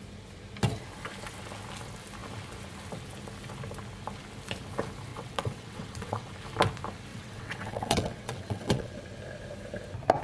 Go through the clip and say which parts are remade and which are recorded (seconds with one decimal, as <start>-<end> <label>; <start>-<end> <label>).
0.0-5.1 recorded; 5.1-6.3 remade; 6.3-7.1 recorded; 7.1-9.0 remade; 9.0-10.2 recorded